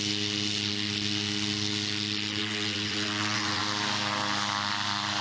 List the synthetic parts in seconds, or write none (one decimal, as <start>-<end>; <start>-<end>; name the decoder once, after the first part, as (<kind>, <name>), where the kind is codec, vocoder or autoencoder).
2.4-3.6 (vocoder, WaveNeXt)